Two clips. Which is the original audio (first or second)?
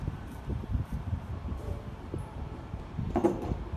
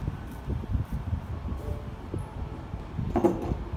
second